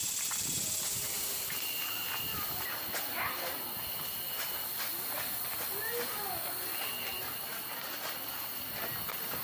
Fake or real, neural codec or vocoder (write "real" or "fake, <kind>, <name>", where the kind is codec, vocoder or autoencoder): real